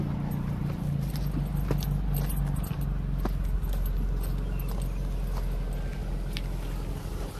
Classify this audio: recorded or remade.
recorded